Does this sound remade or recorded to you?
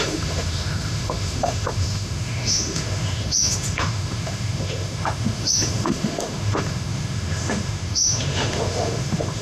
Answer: remade